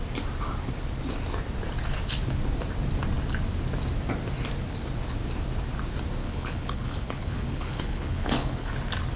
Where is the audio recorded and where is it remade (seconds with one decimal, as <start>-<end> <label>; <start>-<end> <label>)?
0.0-6.2 recorded; 6.2-8.7 remade; 8.7-9.2 recorded